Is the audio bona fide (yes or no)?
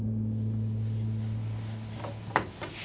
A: yes